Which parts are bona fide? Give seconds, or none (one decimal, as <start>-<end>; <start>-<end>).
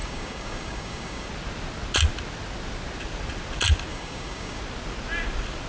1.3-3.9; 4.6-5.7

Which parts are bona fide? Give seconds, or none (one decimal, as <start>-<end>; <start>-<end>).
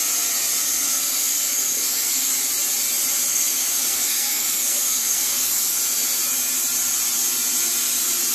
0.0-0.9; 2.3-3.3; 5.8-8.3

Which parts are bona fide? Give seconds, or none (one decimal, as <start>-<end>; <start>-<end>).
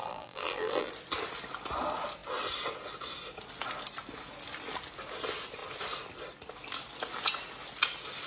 0.9-8.3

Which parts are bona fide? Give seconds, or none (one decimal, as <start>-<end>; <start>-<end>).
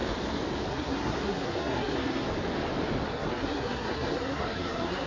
0.0-0.7; 2.2-3.1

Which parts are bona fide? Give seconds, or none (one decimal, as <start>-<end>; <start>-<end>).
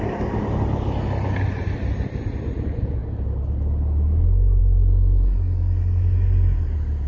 0.0-7.1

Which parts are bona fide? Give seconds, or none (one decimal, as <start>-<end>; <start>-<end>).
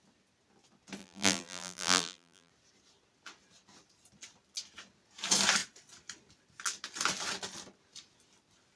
0.0-1.0; 2.5-8.8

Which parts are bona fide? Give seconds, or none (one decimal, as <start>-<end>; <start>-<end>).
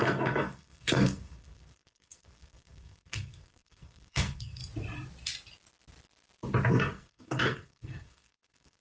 4.6-6.7